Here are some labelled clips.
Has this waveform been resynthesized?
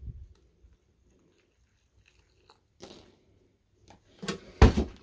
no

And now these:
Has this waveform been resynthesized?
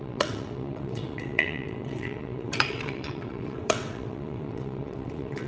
yes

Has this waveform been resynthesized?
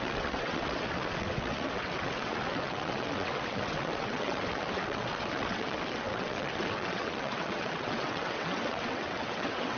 yes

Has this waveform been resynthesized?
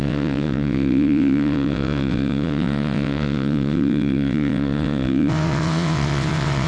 yes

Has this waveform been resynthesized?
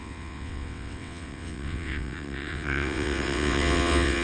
yes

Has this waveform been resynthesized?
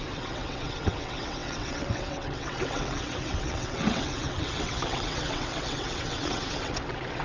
yes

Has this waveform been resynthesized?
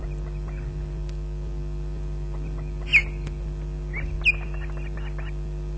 no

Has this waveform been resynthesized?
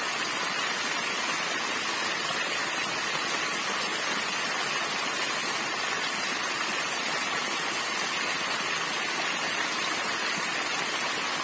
no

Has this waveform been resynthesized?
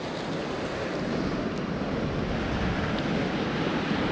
no